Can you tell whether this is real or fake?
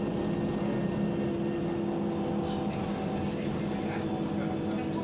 real